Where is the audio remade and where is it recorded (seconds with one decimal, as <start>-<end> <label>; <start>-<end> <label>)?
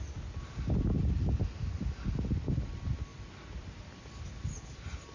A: 0.0-5.1 recorded